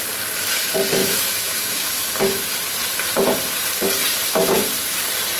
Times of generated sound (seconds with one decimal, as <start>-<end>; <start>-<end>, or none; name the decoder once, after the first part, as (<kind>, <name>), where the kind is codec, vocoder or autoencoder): 1.0-2.1 (autoencoder, DAC-VAE)